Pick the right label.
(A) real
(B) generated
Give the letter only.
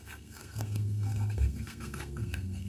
B